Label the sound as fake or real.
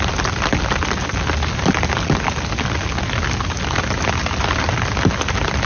real